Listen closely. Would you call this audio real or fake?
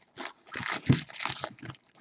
real